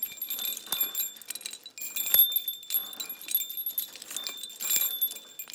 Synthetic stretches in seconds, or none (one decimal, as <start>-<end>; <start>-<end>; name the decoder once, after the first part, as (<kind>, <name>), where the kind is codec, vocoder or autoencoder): none